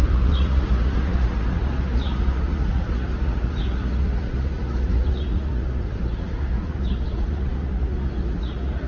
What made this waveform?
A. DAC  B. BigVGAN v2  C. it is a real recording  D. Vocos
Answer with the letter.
D